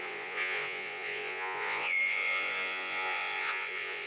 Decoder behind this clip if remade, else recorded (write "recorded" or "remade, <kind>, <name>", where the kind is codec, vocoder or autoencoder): remade, vocoder, Vocos